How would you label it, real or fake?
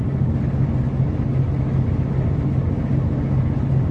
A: real